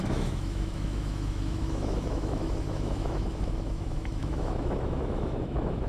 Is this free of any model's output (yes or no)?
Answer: no